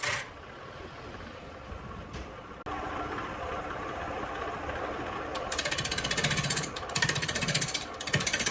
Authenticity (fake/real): real